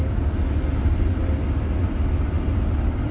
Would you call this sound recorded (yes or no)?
yes